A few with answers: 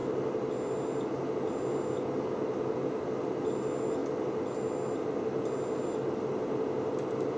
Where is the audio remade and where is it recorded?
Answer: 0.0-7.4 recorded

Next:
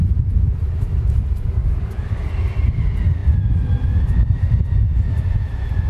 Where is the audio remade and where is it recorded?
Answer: 0.0-5.9 recorded